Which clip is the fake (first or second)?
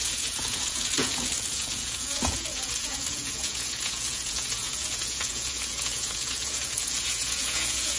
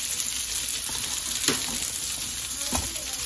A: first